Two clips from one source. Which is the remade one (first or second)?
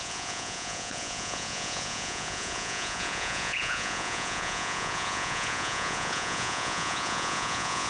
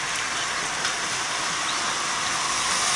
first